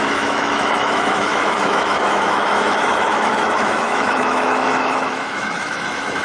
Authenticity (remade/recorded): remade